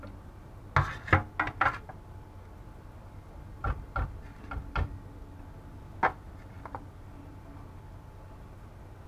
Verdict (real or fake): real